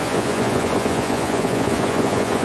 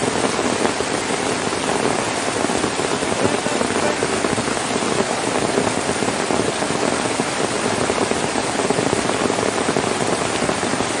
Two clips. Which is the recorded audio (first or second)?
second